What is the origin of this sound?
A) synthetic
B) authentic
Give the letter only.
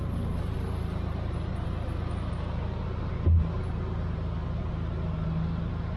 B